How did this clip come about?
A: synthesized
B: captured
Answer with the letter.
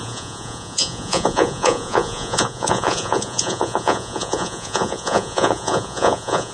A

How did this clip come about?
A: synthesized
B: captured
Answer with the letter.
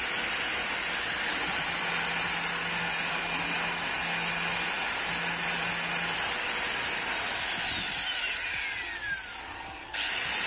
B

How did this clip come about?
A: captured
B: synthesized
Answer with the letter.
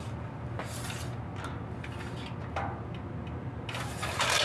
A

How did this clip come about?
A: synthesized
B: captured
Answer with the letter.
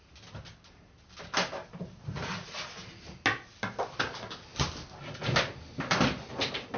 B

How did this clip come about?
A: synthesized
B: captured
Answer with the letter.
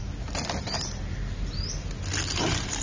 B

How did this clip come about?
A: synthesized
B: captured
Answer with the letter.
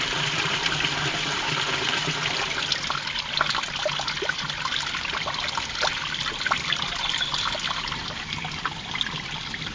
B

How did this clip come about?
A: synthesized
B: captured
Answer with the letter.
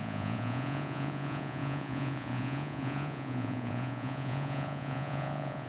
A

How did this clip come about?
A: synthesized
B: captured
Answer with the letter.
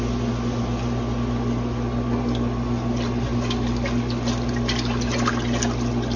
B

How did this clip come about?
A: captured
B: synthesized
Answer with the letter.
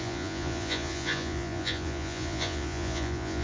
B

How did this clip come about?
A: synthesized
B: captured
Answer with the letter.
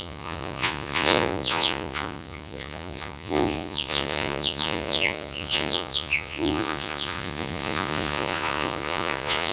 A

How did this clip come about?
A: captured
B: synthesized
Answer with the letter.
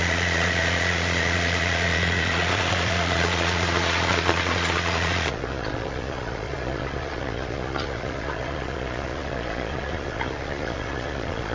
B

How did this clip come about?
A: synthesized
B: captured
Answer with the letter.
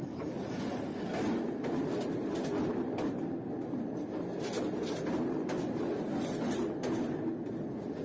B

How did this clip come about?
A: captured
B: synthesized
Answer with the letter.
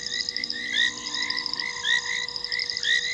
A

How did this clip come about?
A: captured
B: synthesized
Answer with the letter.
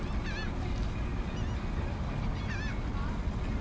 A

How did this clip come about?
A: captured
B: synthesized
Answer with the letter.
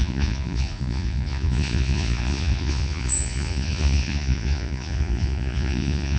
B